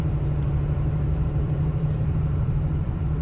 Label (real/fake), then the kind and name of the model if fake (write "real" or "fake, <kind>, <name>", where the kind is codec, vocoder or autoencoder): fake, vocoder, BigVGAN v2